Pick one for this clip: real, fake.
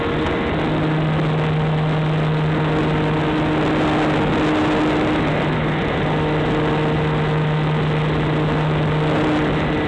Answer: real